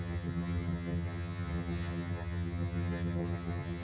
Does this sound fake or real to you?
fake